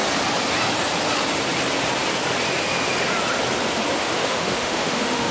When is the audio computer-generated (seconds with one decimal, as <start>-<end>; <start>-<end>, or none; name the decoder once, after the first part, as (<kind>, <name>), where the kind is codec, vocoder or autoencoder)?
4.0-5.3 (autoencoder, DAC-VAE)